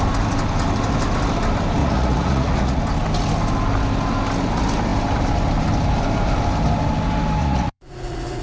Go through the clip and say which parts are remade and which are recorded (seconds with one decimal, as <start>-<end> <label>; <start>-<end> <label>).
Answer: 0.0-1.8 recorded; 1.8-2.8 remade; 2.8-7.4 recorded; 7.4-8.4 remade